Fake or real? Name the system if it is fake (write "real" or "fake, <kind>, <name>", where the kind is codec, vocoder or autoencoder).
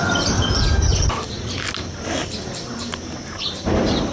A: real